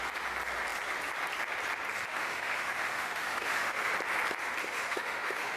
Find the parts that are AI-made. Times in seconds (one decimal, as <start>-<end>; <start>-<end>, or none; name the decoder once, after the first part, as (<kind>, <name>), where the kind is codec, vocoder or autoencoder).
2.1-3.9 (autoencoder, DAC-VAE); 4.6-5.6